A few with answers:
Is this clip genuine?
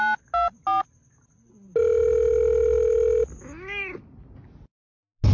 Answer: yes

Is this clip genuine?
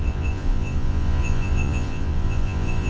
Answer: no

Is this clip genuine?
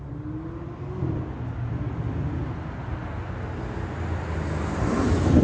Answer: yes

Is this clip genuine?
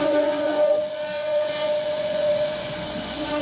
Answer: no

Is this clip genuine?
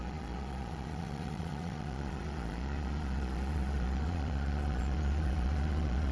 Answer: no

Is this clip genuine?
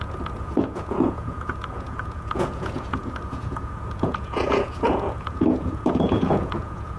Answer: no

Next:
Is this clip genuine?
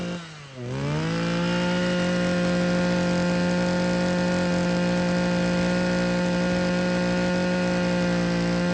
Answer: yes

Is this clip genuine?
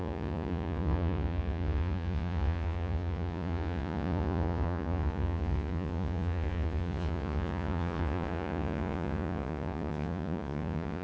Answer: no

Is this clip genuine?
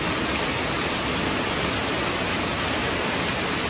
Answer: yes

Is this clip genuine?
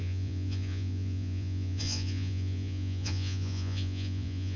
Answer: no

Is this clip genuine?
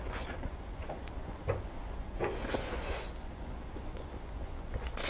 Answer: no